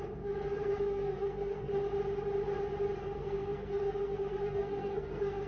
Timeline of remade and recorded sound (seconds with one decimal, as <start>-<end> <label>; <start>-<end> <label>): 0.0-1.7 remade; 1.7-3.0 recorded; 3.0-5.5 remade